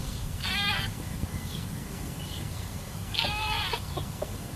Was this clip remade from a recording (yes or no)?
yes